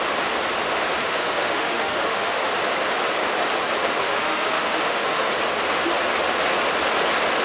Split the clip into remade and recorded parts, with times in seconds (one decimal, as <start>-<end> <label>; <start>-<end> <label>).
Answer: 0.0-1.0 recorded; 1.0-2.4 remade; 2.4-4.0 recorded; 4.0-5.3 remade; 5.3-7.4 recorded